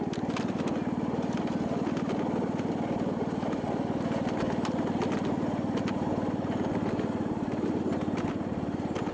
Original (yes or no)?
yes